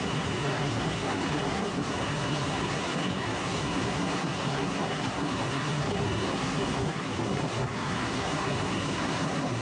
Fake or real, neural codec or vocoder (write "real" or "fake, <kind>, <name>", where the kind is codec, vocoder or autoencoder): fake, codec, SNAC